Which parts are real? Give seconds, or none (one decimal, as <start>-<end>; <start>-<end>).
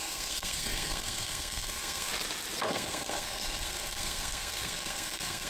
2.1-2.7